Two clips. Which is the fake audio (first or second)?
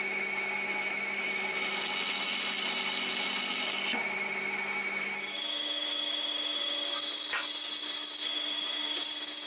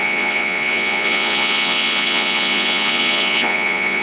second